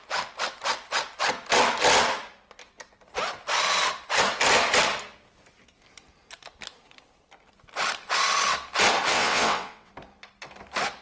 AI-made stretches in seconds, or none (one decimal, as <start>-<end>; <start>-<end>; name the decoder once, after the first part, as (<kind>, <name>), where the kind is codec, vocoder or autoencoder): 9.1-9.9 (vocoder, WaveNeXt)